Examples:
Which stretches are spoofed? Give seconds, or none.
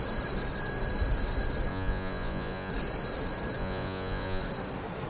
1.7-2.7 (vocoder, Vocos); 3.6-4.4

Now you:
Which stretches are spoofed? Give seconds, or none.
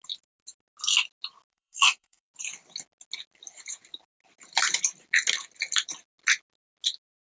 1.5-2.3 (codec, SNAC)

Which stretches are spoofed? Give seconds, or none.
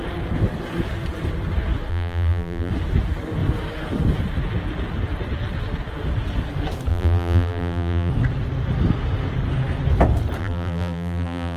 1.9-2.7 (vocoder, BigVGAN v2); 6.9-8.1; 10.4-11.6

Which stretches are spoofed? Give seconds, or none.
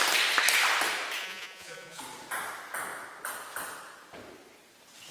1.2-2.0 (vocoder, Vocos)